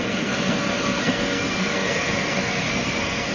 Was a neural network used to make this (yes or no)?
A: yes